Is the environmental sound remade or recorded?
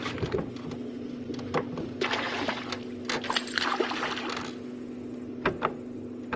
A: recorded